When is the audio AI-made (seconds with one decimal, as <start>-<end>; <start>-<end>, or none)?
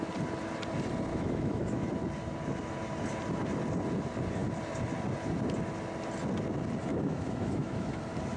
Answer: 1.1-1.9; 6.9-8.0